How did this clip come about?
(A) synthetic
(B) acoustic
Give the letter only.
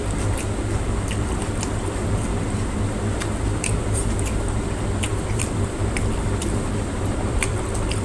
A